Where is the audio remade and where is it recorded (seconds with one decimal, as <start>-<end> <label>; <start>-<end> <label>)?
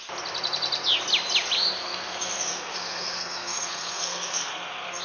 0.0-1.8 recorded; 1.8-5.0 remade